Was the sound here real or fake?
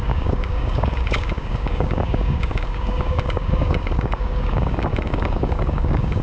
fake